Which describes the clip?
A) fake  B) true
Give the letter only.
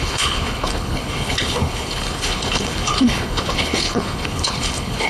A